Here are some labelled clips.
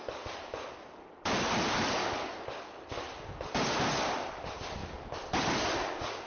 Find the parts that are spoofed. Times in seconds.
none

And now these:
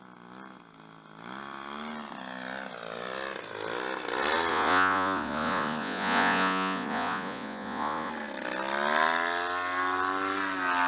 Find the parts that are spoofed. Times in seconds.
4.5-8.1 (vocoder, Vocos)

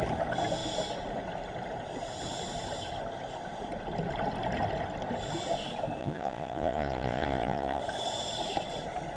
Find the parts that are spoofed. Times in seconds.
6.0-7.8 (vocoder, Vocos)